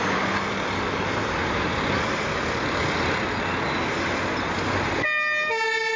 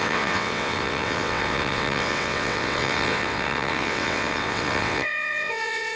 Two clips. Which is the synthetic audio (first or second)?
second